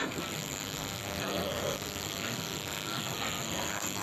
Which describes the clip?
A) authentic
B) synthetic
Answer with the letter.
B